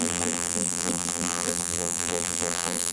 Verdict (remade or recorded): remade